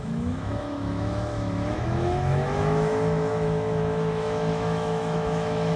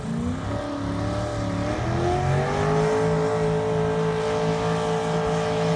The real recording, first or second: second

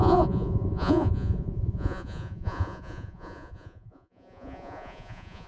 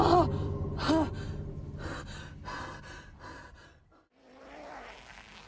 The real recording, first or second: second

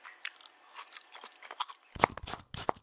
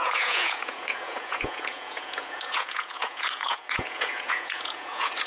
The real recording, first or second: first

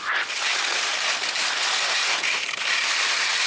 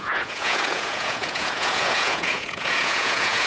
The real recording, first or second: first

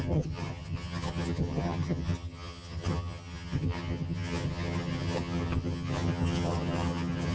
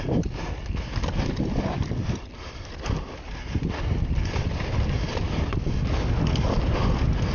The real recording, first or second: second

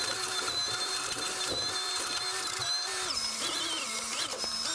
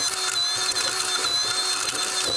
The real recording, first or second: second